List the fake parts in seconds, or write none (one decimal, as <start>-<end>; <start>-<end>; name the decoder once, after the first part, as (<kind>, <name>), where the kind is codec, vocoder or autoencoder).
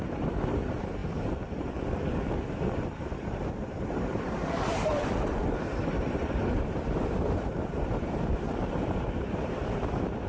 0.0-1.0 (vocoder, BigVGAN v2); 2.8-10.3